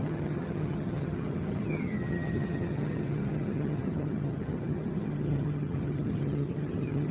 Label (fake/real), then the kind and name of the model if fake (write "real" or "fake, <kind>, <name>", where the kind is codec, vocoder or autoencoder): fake, vocoder, HiFi-GAN